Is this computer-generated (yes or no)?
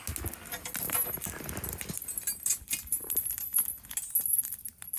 no